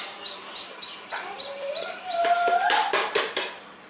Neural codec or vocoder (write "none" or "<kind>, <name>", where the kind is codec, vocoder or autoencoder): vocoder, BigVGAN v2